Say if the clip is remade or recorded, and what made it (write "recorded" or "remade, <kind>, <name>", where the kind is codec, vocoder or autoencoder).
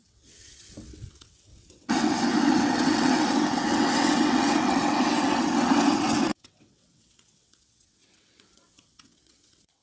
remade, vocoder, WaveNeXt